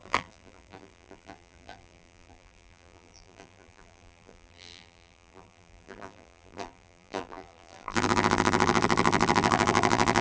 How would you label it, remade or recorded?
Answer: remade